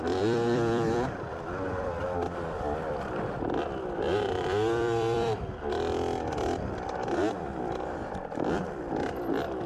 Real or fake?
fake